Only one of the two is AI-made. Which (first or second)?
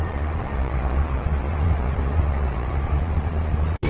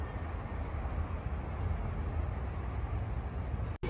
first